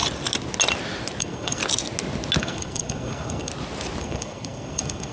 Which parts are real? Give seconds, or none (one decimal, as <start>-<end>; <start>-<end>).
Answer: 0.0-1.2; 1.6-2.4; 3.5-4.0